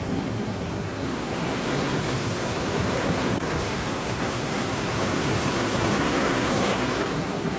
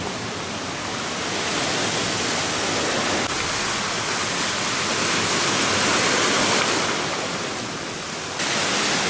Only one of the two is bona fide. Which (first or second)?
second